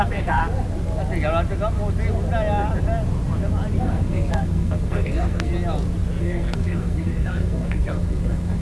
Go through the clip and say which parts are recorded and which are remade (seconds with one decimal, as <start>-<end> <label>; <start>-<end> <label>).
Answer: 0.0-0.4 remade; 0.4-3.8 recorded; 3.8-5.5 remade; 5.5-6.2 recorded; 6.2-8.6 remade